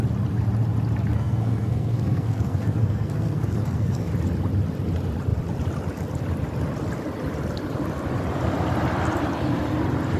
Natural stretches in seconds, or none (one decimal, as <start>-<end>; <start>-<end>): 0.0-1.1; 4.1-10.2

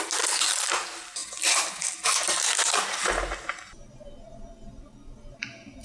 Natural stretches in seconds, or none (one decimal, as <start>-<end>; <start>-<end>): 0.0-5.8

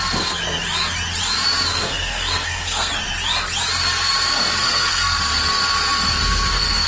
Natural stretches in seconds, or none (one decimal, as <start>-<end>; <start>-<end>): 0.0-1.7; 2.9-4.6; 5.2-6.1